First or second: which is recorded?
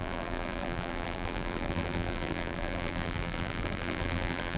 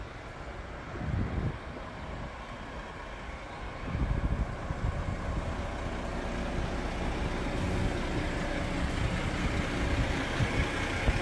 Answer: second